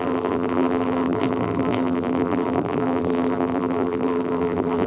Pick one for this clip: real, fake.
fake